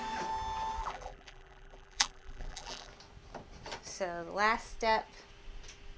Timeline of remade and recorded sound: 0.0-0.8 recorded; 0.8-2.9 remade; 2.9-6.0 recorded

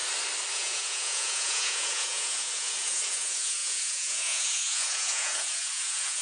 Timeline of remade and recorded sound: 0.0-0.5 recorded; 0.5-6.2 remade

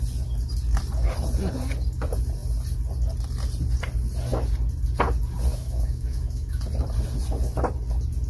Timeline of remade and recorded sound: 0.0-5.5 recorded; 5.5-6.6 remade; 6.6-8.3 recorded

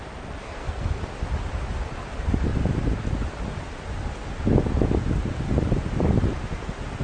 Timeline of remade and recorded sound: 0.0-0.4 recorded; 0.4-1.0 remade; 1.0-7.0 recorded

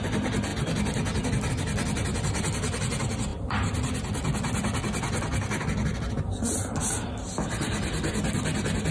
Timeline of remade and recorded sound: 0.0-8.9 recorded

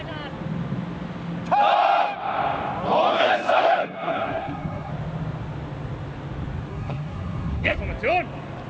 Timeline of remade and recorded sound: 0.0-3.1 recorded; 3.1-4.9 remade; 4.9-6.7 recorded; 6.7-7.8 remade; 7.8-8.7 recorded